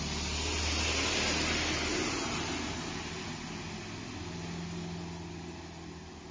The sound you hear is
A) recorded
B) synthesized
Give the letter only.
A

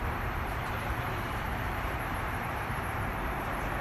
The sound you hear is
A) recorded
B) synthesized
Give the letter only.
B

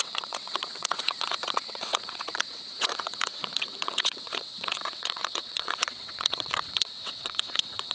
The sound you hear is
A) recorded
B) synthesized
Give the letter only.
B